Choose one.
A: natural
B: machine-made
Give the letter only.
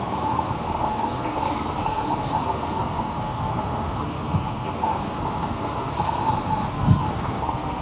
B